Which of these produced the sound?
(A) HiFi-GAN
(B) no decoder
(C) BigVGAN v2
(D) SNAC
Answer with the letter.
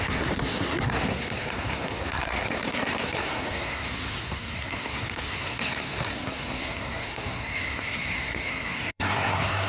D